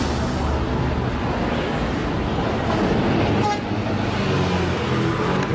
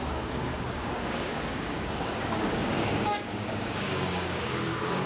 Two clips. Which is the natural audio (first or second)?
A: first